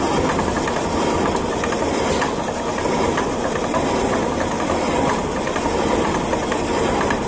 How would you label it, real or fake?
real